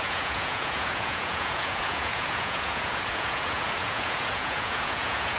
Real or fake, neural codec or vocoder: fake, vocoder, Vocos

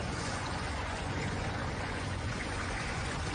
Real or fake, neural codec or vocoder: fake, vocoder, Vocos